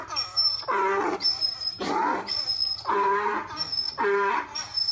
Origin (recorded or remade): recorded